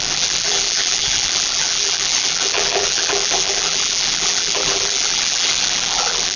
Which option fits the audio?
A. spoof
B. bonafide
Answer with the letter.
A